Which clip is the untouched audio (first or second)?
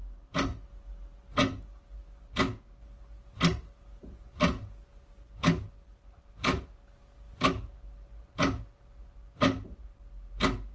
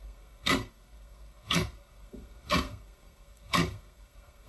first